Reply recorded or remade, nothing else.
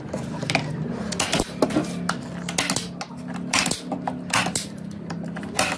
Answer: recorded